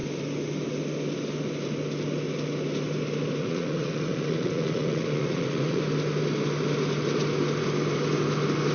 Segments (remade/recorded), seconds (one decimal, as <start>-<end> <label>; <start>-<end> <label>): 0.0-3.4 recorded; 3.4-5.8 remade; 5.8-8.7 recorded